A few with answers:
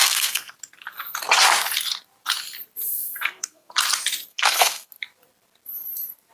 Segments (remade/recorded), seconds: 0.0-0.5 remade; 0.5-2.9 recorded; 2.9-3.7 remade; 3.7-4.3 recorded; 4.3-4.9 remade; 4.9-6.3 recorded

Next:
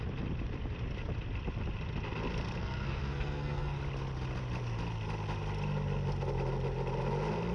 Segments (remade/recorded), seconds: 0.0-2.6 recorded; 2.6-3.8 remade; 3.8-7.5 recorded

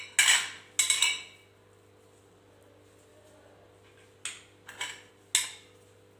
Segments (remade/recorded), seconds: 0.0-6.2 recorded

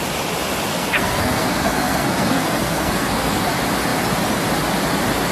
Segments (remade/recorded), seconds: 0.0-0.7 recorded; 0.7-3.5 remade; 3.5-5.3 recorded

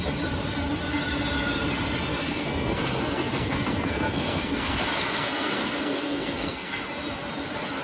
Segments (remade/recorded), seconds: 0.0-2.1 recorded; 2.1-6.8 remade; 6.8-7.8 recorded

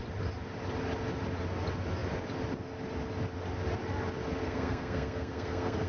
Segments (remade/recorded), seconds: 0.0-4.4 recorded; 4.4-5.9 remade